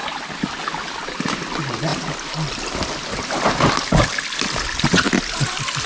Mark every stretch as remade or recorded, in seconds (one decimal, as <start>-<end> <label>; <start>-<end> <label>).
0.0-5.9 recorded